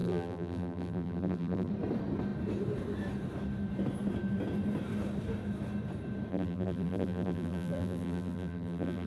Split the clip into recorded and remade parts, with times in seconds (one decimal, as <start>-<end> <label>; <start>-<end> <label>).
0.0-1.7 remade; 1.7-6.3 recorded; 6.3-9.1 remade